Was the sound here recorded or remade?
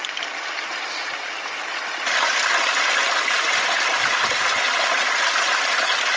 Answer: recorded